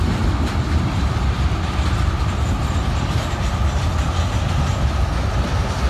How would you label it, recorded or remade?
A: recorded